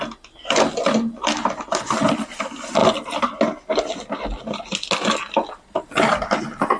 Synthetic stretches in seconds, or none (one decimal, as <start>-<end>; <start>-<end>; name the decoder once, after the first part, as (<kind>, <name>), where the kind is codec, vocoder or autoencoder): none